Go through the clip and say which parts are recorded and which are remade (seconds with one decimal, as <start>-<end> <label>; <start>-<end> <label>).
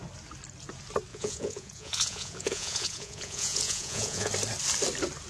0.0-1.1 recorded; 1.1-4.3 remade; 4.3-5.3 recorded